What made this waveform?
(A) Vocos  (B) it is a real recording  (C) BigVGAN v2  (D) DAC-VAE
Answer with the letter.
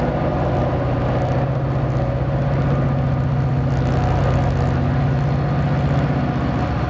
B